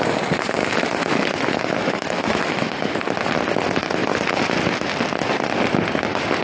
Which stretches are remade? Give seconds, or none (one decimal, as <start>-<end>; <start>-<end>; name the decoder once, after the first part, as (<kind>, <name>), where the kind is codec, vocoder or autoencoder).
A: 0.6-2.9 (autoencoder, DAC-VAE)